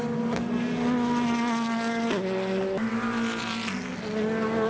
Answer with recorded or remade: recorded